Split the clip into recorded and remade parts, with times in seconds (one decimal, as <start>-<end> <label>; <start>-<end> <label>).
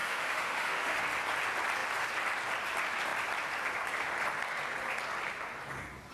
0.0-1.0 remade; 1.0-6.1 recorded